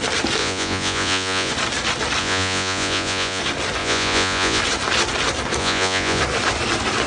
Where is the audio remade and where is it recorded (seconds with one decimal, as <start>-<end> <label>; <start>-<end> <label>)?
0.0-0.4 recorded; 0.4-1.5 remade; 1.5-2.2 recorded; 2.2-3.4 remade; 3.4-3.8 recorded; 3.8-4.6 remade; 4.6-5.6 recorded; 5.6-6.2 remade; 6.2-7.1 recorded